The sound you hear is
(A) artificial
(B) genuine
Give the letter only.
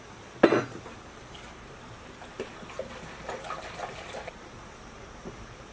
A